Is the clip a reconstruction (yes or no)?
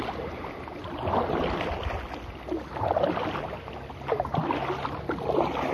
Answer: no